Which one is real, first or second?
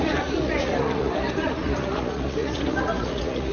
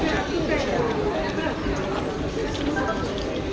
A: second